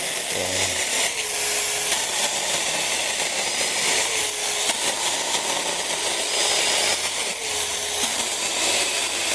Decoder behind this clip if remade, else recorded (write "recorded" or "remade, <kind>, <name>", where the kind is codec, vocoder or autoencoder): recorded